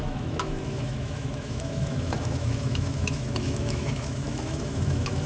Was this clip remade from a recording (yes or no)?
yes